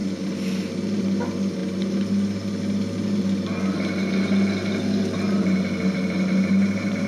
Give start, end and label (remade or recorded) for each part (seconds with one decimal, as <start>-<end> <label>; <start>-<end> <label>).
0.0-7.1 recorded